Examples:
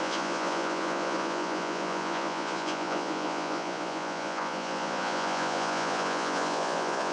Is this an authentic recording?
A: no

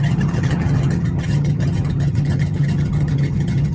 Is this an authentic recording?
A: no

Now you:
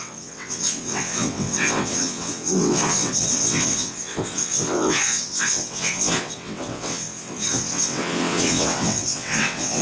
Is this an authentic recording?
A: no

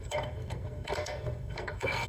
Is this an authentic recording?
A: no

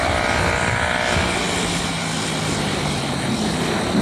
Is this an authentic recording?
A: yes